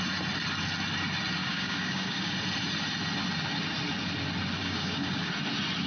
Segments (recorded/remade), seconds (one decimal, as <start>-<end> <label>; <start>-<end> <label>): 0.0-1.4 recorded; 1.4-2.3 remade; 2.3-4.6 recorded; 4.6-5.3 remade; 5.3-5.9 recorded